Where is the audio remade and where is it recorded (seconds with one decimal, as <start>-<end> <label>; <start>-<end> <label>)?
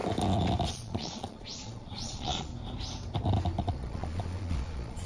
0.0-0.7 recorded; 0.7-2.5 remade; 2.5-3.6 recorded; 3.6-5.1 remade